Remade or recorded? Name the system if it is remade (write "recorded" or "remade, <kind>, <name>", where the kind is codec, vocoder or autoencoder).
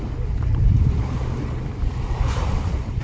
remade, vocoder, BigVGAN v2